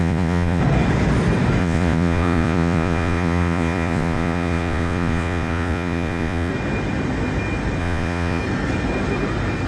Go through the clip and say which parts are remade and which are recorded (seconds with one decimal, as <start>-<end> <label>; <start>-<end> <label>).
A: 0.0-0.6 remade; 0.6-1.6 recorded; 1.6-6.5 remade; 6.5-7.8 recorded; 7.8-8.4 remade; 8.4-9.7 recorded